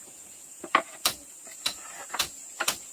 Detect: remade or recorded remade